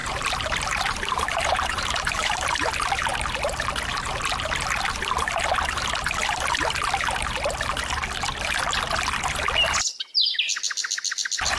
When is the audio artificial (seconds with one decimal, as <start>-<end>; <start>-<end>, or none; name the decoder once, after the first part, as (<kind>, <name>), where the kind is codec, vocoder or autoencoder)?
0.0-2.7 (vocoder, BigVGAN v2)